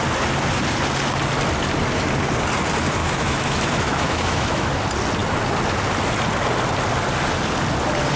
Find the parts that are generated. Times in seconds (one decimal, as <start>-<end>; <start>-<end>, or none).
3.0-4.7